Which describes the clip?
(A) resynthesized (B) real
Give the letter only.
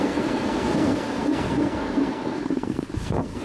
A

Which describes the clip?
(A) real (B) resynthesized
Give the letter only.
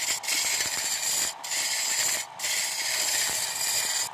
A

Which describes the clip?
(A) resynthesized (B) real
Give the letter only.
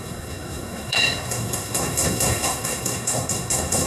A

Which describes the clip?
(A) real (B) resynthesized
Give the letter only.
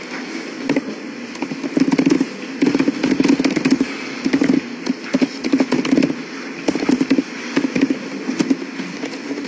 A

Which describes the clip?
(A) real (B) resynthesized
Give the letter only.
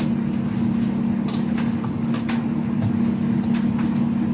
A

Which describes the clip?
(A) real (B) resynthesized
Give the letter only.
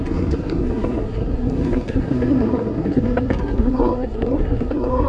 B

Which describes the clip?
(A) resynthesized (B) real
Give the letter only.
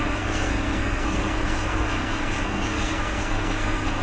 A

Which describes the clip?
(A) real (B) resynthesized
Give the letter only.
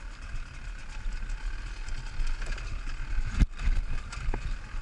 A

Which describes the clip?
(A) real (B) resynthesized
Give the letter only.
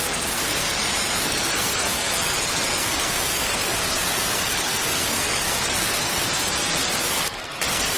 B